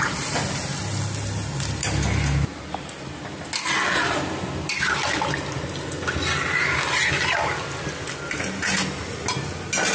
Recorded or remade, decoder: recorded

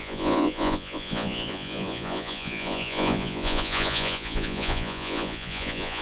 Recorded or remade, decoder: remade, vocoder, Vocos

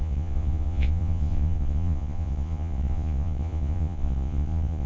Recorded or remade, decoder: remade, vocoder, Vocos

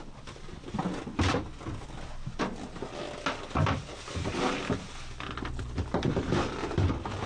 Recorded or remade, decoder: recorded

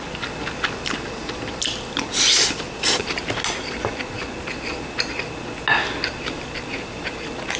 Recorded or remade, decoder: recorded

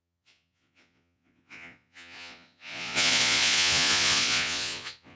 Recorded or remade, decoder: remade, vocoder, Vocos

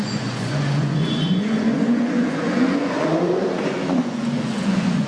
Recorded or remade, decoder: remade, vocoder, Vocos